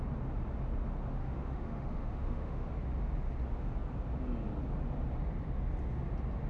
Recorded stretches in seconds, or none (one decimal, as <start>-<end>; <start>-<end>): 0.0-1.2; 2.7-6.5